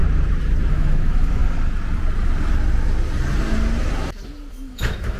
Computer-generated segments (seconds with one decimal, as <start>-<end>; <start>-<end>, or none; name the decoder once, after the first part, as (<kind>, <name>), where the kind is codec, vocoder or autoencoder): 0.7-1.4 (autoencoder, DAC-VAE); 4.5-5.2